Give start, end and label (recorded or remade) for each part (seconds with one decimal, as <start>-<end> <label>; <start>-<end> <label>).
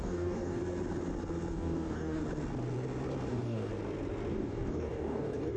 0.0-0.6 remade; 0.6-1.5 recorded; 1.5-2.2 remade; 2.2-3.3 recorded; 3.3-3.7 remade; 3.7-4.3 recorded; 4.3-5.6 remade